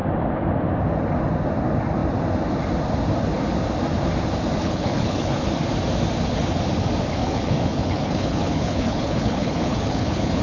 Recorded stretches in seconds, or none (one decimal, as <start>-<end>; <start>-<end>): 0.0-4.6; 5.5-7.2